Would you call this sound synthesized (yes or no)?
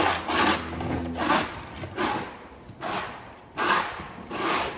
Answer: no